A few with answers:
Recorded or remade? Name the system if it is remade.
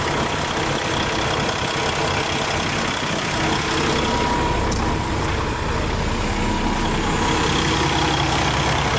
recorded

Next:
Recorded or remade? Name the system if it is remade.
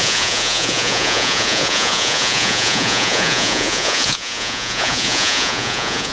remade, vocoder, Vocos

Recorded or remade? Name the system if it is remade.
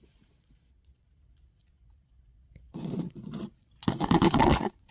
remade, vocoder, Vocos